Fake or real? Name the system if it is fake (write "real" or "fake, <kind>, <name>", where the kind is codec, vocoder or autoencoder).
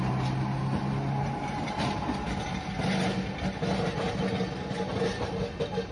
real